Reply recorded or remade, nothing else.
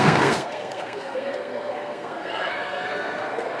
remade